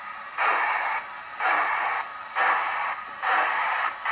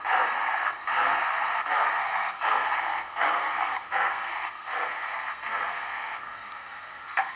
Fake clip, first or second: second